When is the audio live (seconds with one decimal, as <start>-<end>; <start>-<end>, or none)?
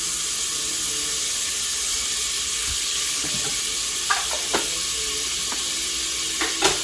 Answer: 0.0-2.6; 3.3-6.8